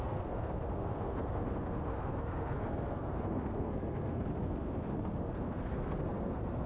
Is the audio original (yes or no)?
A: no